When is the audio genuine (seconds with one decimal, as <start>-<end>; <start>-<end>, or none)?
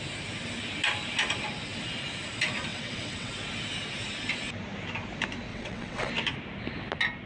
0.0-2.7; 3.3-5.5; 6.1-7.3